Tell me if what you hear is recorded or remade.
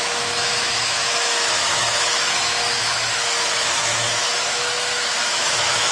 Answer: remade